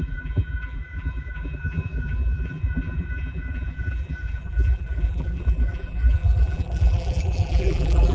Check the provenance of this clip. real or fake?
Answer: fake